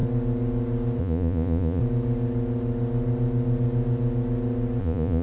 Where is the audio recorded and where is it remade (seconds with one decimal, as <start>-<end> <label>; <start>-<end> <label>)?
0.0-1.0 recorded; 1.0-1.8 remade; 1.8-4.8 recorded; 4.8-5.2 remade